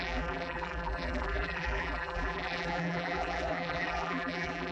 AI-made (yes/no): yes